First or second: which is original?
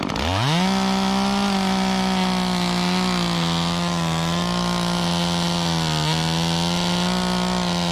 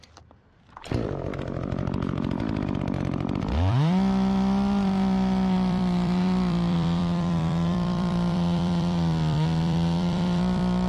first